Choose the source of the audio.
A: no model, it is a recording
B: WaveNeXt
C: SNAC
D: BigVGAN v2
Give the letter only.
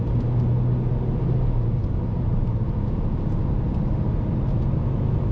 A